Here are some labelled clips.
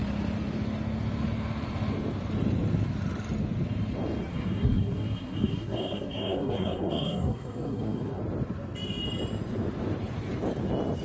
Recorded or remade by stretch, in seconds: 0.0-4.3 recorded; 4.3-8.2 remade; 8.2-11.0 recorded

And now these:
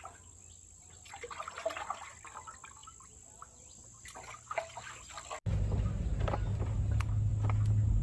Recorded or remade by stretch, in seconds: 0.0-8.0 recorded

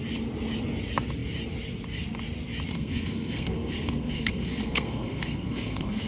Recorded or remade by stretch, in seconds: 0.0-2.7 recorded; 2.7-6.1 remade

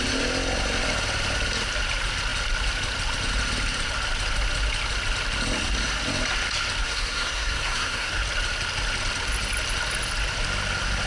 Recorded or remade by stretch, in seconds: 0.0-6.8 recorded; 6.8-8.2 remade; 8.2-11.1 recorded

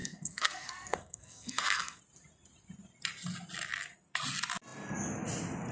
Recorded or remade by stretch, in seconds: 0.0-2.0 remade; 2.0-5.7 recorded